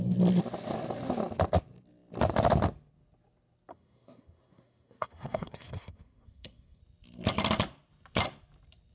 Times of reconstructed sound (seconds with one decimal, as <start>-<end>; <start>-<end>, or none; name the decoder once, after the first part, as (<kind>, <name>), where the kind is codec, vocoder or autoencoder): 3.7-6.8 (codec, SNAC)